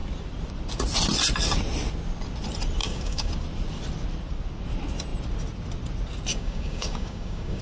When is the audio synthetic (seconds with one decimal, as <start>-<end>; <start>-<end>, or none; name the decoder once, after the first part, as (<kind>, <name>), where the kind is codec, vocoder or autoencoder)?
2.8-3.3 (codec, DAC); 6.3-7.6